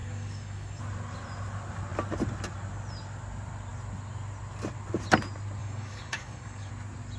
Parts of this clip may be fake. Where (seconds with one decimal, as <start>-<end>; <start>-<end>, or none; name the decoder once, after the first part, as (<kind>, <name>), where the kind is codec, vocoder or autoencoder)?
0.0-0.8 (codec, DAC); 5.6-6.7